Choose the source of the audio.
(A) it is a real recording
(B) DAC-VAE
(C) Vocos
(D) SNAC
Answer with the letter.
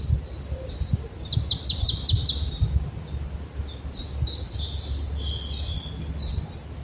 A